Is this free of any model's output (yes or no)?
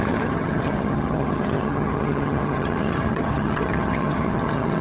no